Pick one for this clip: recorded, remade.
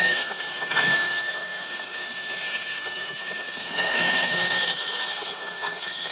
remade